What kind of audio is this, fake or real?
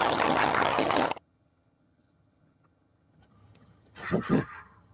fake